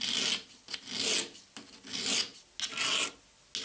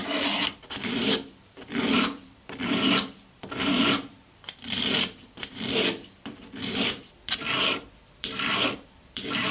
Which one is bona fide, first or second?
first